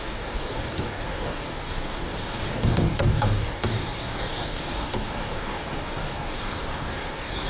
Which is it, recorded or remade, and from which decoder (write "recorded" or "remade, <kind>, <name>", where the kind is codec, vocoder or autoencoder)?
remade, codec, DAC